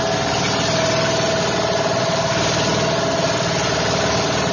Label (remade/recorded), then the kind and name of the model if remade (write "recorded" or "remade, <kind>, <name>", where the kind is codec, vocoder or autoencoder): recorded